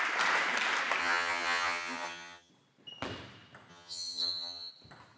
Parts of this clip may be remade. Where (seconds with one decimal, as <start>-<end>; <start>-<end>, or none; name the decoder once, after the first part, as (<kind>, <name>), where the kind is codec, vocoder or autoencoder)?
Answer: 1.0-2.5 (vocoder, HiFi-GAN); 3.7-4.7

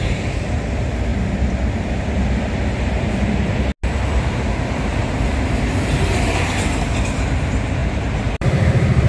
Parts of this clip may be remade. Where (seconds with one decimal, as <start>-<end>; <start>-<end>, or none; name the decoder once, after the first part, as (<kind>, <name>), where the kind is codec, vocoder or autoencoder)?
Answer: 1.1-2.8 (vocoder, BigVGAN v2); 4.9-5.4; 7.8-9.1

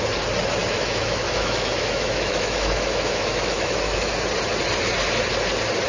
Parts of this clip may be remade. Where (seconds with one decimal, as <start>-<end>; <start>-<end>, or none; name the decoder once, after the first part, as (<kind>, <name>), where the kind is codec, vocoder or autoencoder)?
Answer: 0.6-4.1 (autoencoder, DAC-VAE)

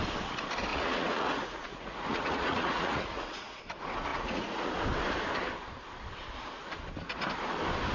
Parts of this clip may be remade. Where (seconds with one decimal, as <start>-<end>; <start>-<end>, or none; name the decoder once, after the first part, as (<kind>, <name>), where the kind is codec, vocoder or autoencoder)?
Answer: 0.7-3.6 (vocoder, Vocos); 4.1-4.7

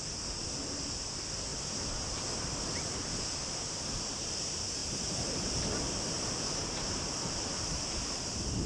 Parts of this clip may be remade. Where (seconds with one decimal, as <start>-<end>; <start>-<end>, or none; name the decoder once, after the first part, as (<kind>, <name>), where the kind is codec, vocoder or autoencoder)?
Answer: 1.5-2.2 (vocoder, BigVGAN v2); 4.8-5.3; 6.6-7.8

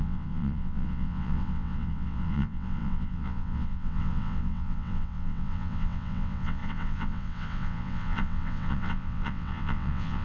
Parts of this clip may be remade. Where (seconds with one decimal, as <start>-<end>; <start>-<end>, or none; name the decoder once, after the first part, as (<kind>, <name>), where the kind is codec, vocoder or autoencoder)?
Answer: 0.0-10.2 (vocoder, WaveNeXt)

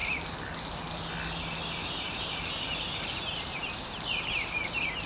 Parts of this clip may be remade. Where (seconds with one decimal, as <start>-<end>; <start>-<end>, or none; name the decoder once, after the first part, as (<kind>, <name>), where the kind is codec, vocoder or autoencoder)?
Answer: 1.8-5.1 (vocoder, BigVGAN v2)